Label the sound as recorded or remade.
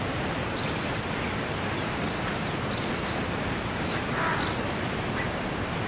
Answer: recorded